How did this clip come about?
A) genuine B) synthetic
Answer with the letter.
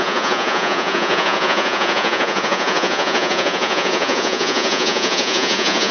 B